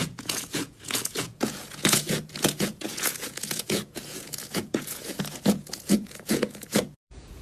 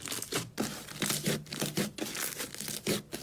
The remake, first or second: first